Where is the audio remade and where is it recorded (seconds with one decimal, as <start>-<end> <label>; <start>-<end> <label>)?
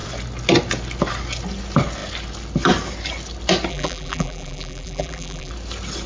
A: 0.0-3.7 recorded; 3.7-5.5 remade; 5.5-6.1 recorded